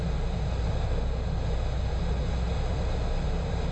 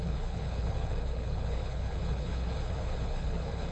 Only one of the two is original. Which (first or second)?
first